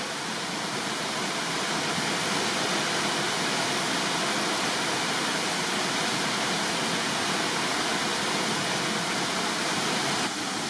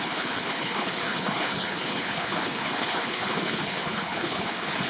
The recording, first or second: first